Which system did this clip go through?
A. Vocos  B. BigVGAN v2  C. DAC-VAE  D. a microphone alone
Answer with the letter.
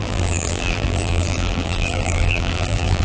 B